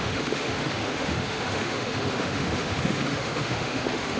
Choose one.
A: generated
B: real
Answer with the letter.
A